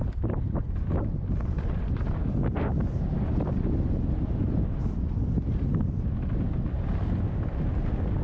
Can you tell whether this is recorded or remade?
recorded